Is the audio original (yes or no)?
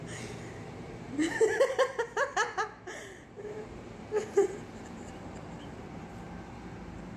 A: no